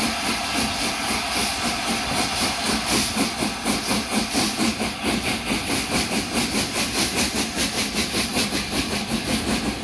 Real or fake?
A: real